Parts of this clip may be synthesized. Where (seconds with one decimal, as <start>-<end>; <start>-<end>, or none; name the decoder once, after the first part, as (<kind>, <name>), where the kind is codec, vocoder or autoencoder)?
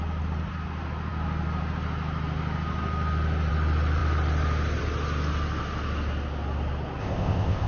7.0-7.7 (codec, ZipCodec)